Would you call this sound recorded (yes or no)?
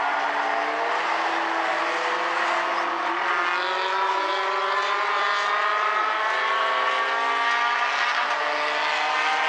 yes